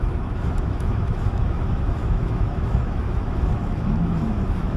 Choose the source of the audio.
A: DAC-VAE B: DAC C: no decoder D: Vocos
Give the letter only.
A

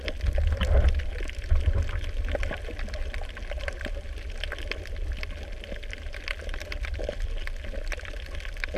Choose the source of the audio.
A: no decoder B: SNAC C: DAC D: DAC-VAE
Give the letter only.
A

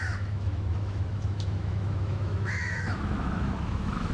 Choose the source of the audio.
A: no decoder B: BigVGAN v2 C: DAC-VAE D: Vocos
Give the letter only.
C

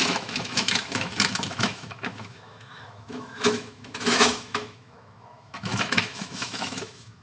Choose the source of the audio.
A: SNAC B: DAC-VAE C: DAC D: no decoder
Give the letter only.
B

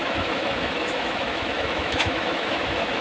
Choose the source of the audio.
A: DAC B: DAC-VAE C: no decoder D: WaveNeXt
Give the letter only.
B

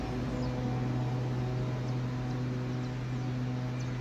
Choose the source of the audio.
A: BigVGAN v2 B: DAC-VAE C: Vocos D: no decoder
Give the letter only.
D